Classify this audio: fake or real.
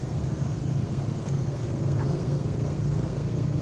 fake